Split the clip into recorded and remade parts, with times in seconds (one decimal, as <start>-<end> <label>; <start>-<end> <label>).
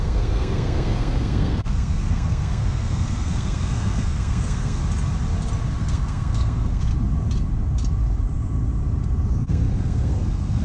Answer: 0.0-4.8 remade; 4.8-5.8 recorded; 5.8-6.9 remade; 6.9-9.3 recorded; 9.3-10.6 remade